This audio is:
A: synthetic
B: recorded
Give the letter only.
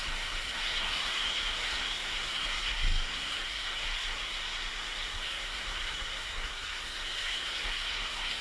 A